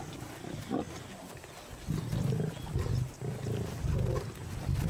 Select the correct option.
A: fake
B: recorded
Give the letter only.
B